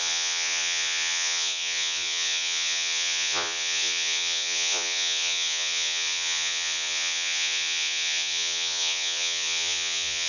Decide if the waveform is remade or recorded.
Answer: remade